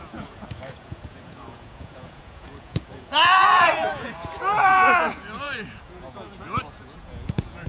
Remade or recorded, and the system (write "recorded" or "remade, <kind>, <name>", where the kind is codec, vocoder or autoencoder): remade, vocoder, Vocos